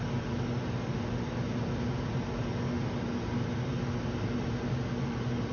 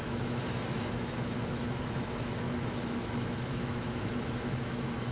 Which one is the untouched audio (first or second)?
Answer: first